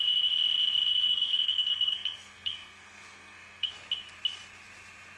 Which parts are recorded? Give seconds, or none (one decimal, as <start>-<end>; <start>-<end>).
0.0-0.9; 3.7-5.2